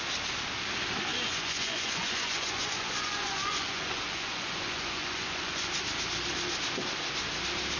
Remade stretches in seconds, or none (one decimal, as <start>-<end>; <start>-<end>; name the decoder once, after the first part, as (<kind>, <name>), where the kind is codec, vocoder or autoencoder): 1.1-5.7 (vocoder, Vocos)